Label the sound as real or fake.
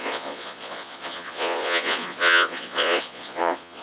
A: fake